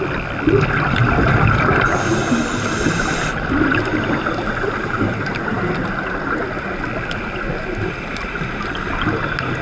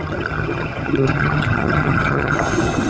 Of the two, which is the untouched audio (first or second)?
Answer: first